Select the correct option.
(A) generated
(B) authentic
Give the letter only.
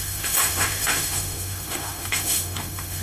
A